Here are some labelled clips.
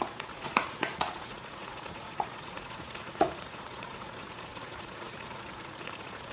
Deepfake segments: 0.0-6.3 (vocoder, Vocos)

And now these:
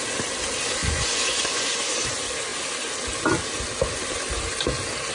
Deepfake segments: 0.8-2.1 (vocoder, Vocos)

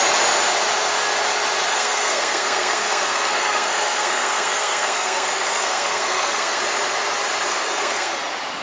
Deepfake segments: 1.7-6.6 (codec, SNAC); 7.5-8.1